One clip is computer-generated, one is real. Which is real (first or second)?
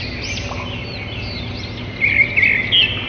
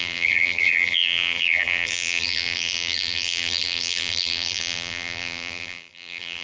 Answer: first